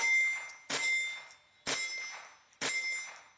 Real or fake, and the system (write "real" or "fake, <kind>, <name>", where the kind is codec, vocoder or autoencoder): real